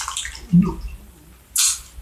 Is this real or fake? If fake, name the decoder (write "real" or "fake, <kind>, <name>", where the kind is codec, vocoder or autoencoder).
real